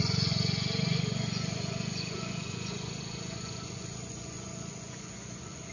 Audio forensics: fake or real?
fake